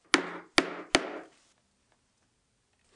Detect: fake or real real